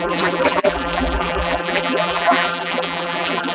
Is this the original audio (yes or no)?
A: no